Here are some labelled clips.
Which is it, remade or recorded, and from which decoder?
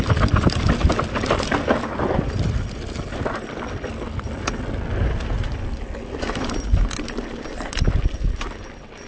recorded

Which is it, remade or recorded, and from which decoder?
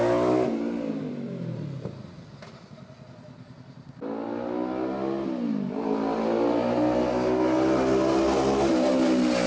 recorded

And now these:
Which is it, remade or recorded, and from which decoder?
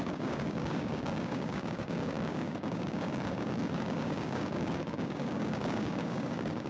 remade, codec, DAC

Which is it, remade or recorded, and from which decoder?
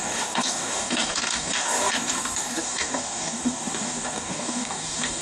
remade, codec, DAC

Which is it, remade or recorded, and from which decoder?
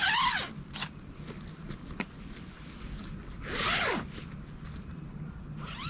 recorded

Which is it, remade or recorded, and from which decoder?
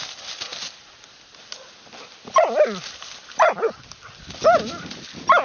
recorded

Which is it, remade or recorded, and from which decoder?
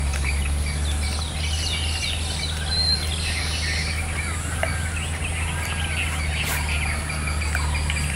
recorded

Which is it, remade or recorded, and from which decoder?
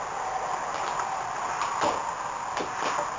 recorded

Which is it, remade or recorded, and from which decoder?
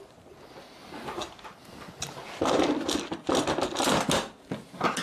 recorded